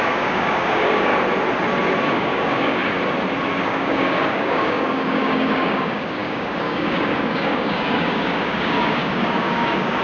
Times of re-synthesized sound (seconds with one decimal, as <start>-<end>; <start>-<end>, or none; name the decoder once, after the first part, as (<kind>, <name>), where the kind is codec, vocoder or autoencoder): 0.0-1.1 (codec, DAC); 2.0-2.8; 3.5-10.0